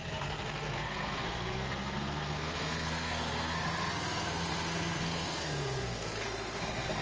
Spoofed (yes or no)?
yes